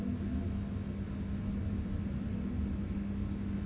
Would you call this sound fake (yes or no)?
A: no